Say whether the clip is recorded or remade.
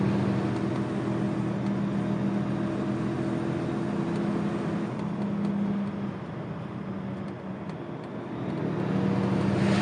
recorded